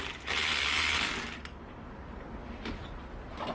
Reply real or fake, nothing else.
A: real